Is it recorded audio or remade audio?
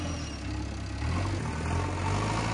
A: recorded